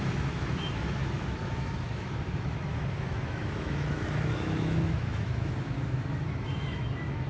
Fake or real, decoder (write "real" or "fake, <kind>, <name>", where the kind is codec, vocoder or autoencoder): fake, autoencoder, DAC-VAE